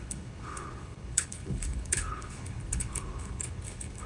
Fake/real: fake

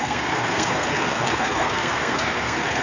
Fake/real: fake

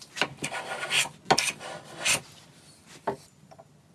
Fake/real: real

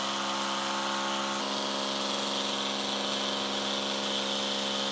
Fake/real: real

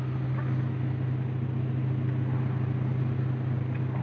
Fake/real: real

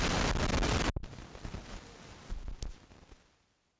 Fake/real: real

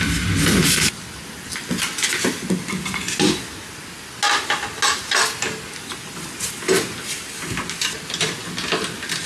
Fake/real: real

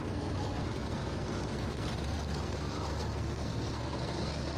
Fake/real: fake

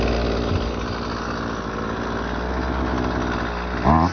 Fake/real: real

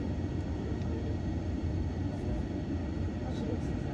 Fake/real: fake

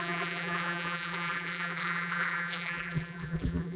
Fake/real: fake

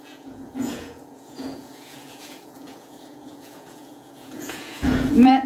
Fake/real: fake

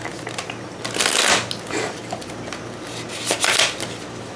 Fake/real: real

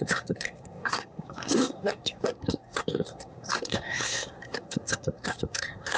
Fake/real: fake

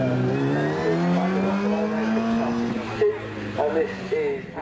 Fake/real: real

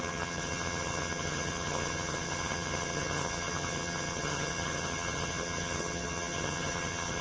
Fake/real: fake